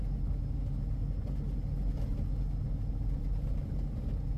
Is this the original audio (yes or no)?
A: yes